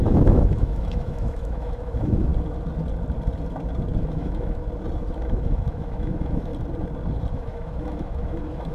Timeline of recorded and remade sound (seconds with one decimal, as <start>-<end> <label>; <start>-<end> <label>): 0.0-2.3 remade; 2.3-4.1 recorded; 4.1-4.6 remade; 4.6-5.2 recorded; 5.2-6.5 remade; 6.5-7.3 recorded; 7.3-8.7 remade